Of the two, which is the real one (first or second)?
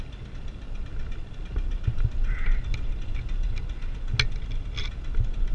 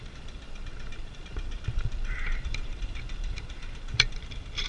first